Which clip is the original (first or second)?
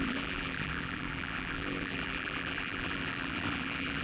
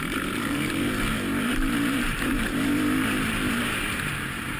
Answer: second